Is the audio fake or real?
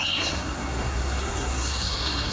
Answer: fake